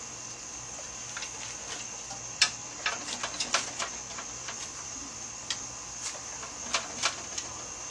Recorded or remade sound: recorded